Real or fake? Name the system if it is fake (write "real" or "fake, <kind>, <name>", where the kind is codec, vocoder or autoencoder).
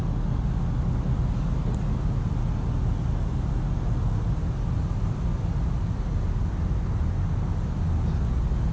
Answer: real